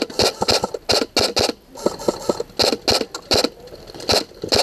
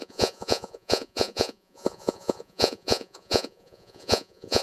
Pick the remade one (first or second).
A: second